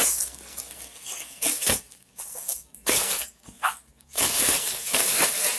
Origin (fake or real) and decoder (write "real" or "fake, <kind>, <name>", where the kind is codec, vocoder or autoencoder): fake, codec, SNAC